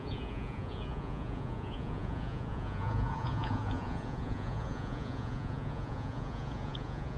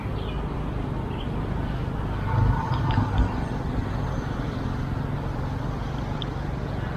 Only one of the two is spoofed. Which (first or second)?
first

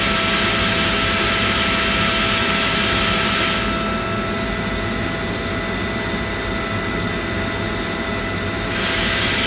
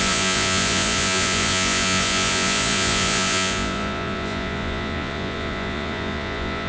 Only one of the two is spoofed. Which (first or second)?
second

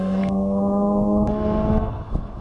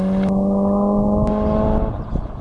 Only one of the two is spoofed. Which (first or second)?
first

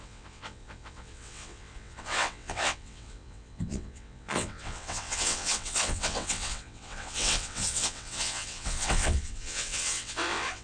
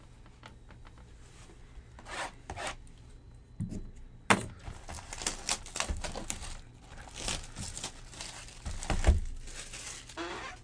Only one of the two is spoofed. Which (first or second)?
first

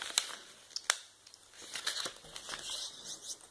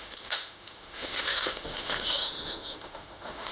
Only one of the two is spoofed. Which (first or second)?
second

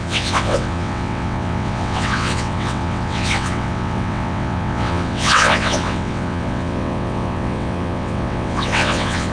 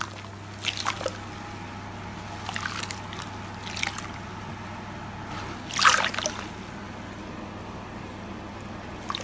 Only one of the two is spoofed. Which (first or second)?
first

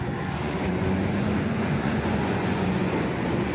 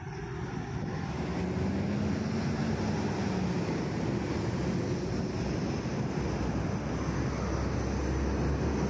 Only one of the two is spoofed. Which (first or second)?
first